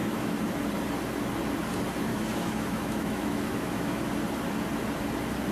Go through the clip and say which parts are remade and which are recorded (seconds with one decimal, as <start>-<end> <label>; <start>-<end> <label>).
0.0-0.5 remade; 0.5-2.1 recorded; 2.1-4.1 remade; 4.1-5.5 recorded